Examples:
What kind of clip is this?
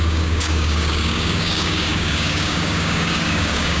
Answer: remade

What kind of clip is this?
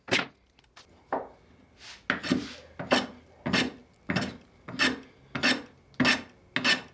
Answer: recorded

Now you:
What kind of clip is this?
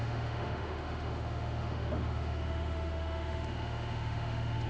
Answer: remade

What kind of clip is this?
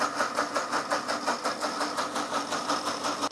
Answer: recorded